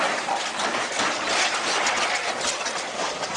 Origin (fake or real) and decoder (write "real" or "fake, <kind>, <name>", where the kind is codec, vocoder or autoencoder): real